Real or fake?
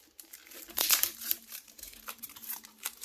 fake